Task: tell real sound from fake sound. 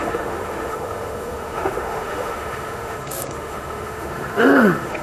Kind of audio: fake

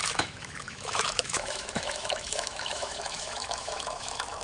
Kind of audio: fake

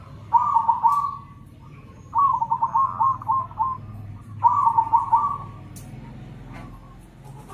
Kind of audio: real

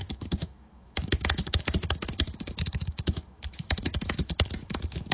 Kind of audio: fake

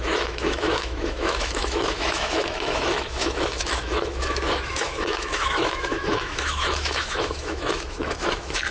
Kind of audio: fake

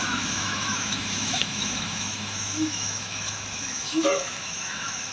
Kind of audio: fake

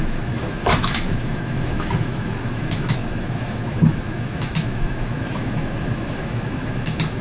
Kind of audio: fake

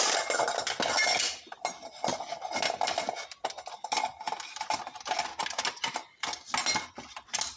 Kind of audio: real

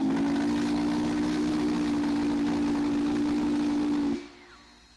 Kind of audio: real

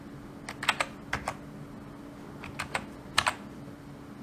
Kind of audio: real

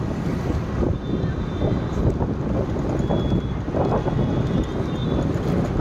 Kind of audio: real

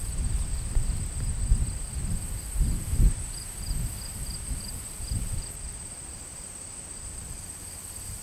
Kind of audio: real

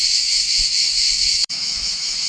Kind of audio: fake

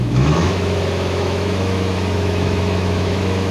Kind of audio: fake